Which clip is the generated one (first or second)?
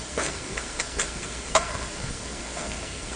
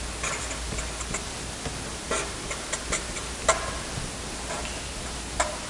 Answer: first